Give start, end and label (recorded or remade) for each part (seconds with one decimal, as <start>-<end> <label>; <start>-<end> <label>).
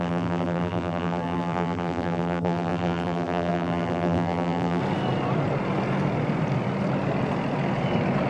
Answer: 0.0-4.8 remade; 4.8-8.3 recorded